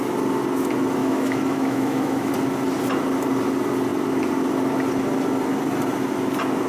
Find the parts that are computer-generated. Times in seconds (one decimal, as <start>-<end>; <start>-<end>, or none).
1.0-2.3